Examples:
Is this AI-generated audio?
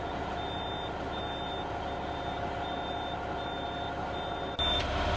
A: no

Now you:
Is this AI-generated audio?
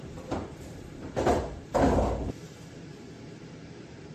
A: yes